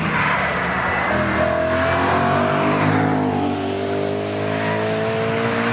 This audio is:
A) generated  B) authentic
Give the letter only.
B